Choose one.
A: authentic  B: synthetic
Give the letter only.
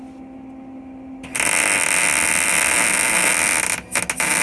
A